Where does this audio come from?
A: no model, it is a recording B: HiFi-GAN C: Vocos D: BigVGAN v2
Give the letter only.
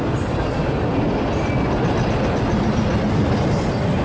A